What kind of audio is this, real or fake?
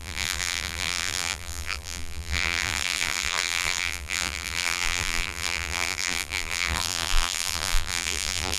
fake